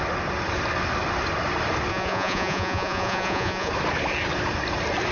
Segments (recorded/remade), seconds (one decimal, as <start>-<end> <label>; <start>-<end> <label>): 0.0-1.9 recorded; 1.9-3.7 remade; 3.7-5.1 recorded